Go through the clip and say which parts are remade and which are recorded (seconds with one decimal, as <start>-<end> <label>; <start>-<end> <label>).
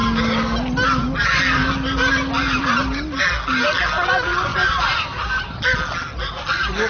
0.0-4.5 recorded; 4.5-5.6 remade; 5.6-6.9 recorded